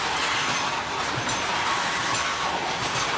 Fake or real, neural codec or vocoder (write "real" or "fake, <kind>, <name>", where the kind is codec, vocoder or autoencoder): real